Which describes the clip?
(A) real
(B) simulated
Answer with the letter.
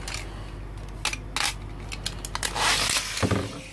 A